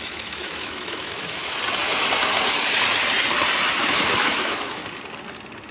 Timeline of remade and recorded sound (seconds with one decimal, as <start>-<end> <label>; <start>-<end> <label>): 0.0-1.4 remade; 1.4-3.8 recorded; 3.8-4.8 remade; 4.8-5.7 recorded

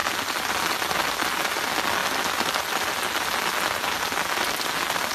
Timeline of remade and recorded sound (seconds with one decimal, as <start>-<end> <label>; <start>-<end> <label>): 0.0-5.1 recorded

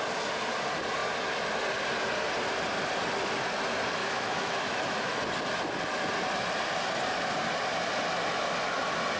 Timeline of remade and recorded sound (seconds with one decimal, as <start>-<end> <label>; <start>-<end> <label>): 0.0-4.0 recorded; 4.0-5.2 remade; 5.2-9.2 recorded

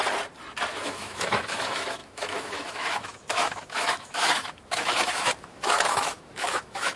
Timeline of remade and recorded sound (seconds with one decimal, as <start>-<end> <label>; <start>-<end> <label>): 0.0-0.7 recorded; 0.7-7.0 remade

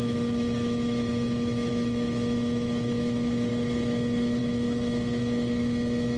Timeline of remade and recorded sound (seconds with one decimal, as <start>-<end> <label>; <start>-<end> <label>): 0.0-6.2 remade

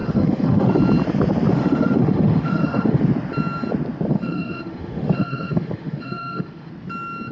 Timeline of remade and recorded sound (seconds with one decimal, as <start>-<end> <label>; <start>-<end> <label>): 0.0-0.8 remade; 0.8-1.5 recorded; 1.5-3.0 remade; 3.0-4.1 recorded; 4.1-6.7 remade; 6.7-7.3 recorded

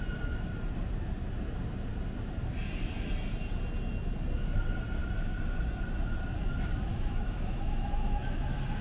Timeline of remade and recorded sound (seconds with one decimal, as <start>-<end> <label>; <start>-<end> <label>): 0.0-6.9 recorded; 6.9-8.4 remade; 8.4-8.8 recorded